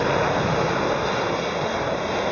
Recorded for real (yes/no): yes